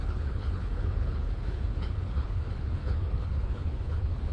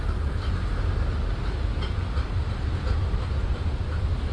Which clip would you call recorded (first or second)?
second